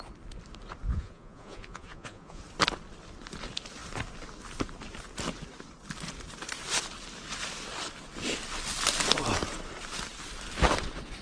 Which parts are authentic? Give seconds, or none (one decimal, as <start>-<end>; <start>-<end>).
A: 0.0-0.9; 2.4-11.2